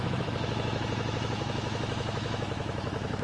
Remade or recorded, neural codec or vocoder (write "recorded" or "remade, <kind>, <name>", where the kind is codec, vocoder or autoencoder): remade, autoencoder, DAC-VAE